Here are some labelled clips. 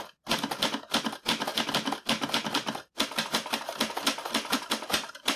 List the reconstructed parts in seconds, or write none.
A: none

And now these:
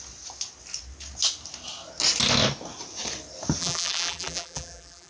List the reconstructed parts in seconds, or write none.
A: 3.6-5.1 (vocoder, BigVGAN v2)

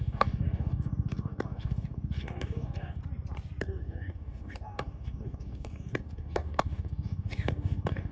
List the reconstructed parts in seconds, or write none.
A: 0.0-3.0 (codec, DAC); 3.6-8.1

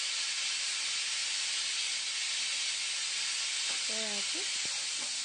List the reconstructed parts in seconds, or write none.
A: none

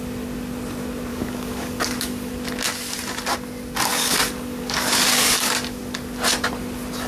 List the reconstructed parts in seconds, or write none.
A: 1.1-2.3 (codec, DAC); 3.9-5.8

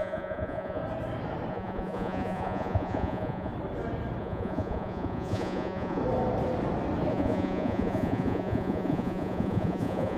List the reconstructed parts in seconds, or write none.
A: 0.0-0.8 (vocoder, Vocos); 1.5-3.5; 4.2-6.0; 7.1-10.2

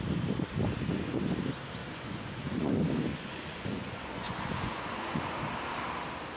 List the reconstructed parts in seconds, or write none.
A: 1.8-2.7 (vocoder, Vocos); 3.1-5.4